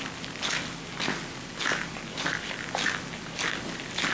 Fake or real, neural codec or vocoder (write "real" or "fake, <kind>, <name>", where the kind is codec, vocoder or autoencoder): real